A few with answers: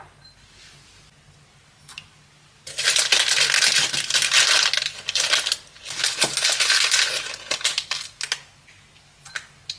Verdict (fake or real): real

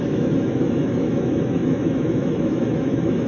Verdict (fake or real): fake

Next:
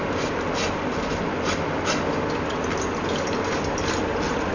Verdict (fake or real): real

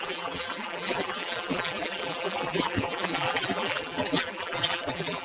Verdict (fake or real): fake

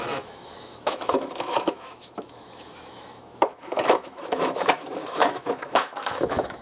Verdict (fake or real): fake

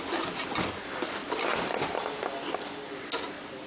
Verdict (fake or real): real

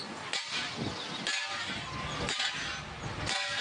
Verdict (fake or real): real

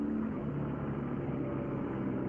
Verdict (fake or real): real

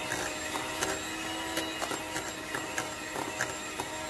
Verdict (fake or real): real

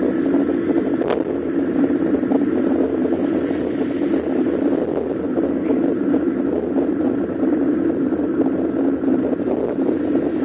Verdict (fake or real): real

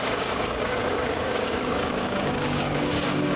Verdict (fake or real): fake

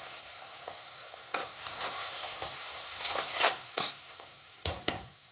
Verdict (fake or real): fake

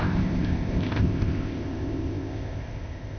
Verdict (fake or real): fake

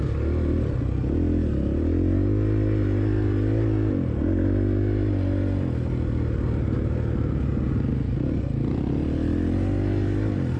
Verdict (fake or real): real